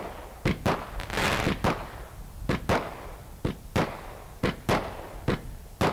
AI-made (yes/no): no